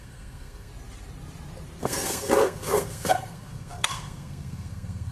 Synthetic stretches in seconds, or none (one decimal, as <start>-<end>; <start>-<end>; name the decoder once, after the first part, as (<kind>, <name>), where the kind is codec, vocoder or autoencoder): 0.0-0.7 (codec, SNAC); 1.8-5.1